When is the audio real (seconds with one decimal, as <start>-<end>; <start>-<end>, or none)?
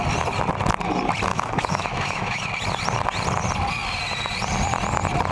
0.0-1.3; 2.4-5.3